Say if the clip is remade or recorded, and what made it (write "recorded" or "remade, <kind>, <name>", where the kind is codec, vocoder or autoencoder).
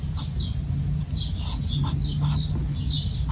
recorded